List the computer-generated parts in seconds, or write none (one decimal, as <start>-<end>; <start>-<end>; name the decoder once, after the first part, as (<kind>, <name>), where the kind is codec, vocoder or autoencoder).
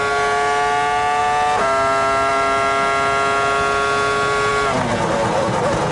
none